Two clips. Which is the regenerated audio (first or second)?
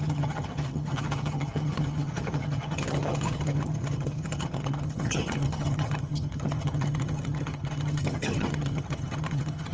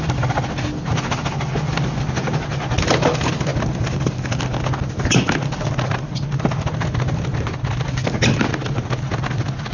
first